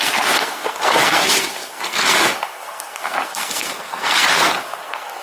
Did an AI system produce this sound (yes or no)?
yes